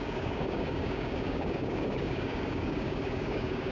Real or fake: fake